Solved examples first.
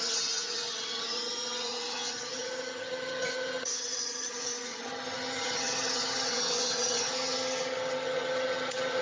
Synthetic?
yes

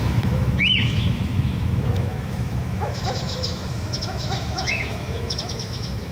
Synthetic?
yes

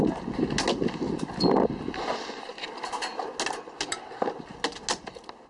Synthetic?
no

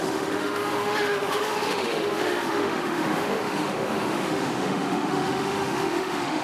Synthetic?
yes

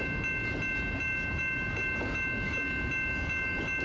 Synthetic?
no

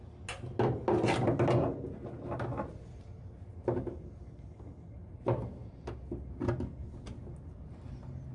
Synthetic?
no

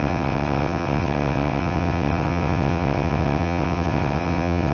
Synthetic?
yes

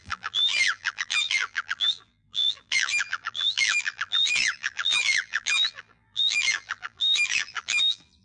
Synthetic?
yes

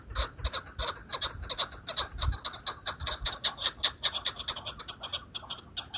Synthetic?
no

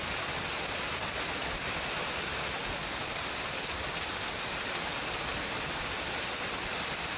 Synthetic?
no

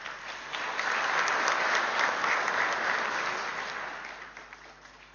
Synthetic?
no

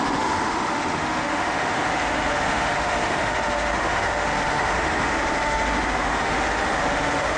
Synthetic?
yes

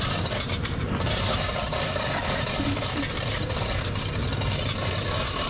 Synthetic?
yes